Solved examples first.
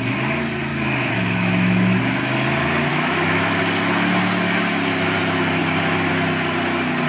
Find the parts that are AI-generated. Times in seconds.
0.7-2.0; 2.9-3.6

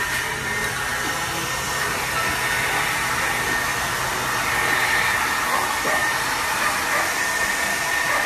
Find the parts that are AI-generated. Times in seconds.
6.0-6.6

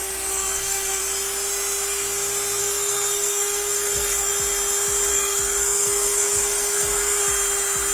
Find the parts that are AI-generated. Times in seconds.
0.0-1.0; 2.6-4.3; 5.1-7.2